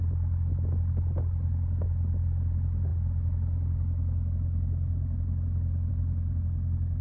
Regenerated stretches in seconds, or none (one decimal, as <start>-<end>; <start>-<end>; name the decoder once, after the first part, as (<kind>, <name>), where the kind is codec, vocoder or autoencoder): none